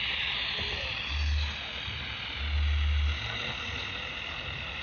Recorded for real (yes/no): yes